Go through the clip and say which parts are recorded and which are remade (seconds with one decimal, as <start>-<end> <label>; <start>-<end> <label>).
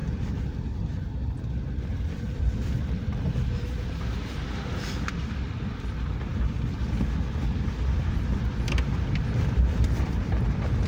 0.0-6.3 remade; 6.3-9.0 recorded; 9.0-10.9 remade